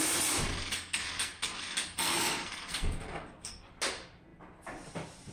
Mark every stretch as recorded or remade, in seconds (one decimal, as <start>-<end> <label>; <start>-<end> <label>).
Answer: 0.0-0.5 recorded; 0.5-3.7 remade; 3.7-5.3 recorded